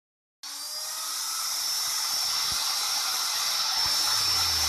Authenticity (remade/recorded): recorded